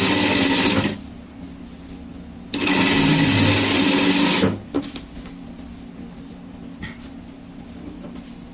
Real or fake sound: real